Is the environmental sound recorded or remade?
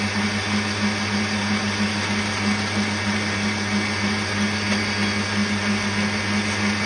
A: recorded